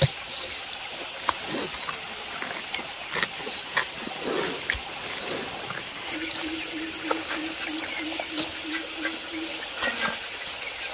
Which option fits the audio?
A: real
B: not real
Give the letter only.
A